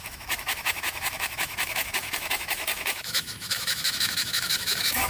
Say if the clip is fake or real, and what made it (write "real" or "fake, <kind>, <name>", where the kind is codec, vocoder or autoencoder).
fake, autoencoder, DAC-VAE